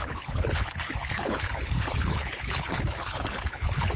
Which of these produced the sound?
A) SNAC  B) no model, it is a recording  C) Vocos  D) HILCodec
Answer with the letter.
D